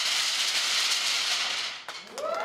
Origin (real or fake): real